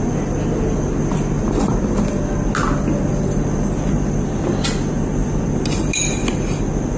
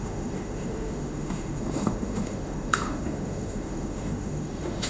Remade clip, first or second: second